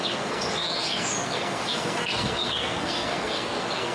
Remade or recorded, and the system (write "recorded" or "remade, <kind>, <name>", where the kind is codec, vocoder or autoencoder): remade, codec, SNAC